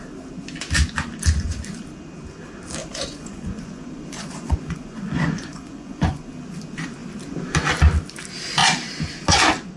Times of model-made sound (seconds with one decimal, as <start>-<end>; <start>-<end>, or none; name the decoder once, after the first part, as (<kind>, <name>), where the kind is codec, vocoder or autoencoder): 2.8-6.3 (vocoder, Vocos)